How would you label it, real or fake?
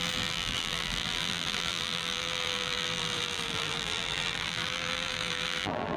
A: fake